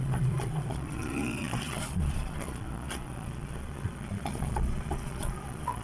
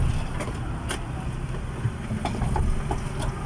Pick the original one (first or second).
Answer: second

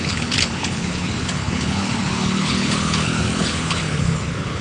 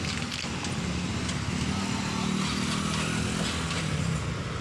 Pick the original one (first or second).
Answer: second